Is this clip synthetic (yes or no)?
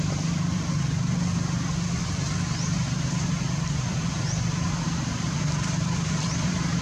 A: yes